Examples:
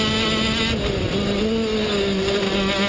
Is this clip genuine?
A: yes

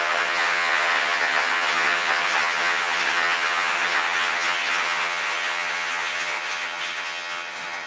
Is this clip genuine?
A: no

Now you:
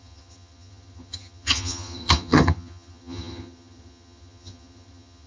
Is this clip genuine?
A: no